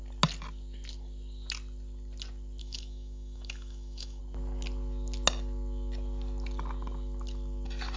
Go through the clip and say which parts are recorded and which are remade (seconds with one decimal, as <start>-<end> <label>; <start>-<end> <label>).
0.0-2.6 recorded; 2.6-4.2 remade; 4.2-8.0 recorded